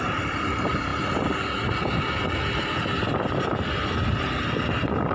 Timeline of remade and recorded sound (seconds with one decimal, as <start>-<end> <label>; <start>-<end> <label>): 0.0-5.1 recorded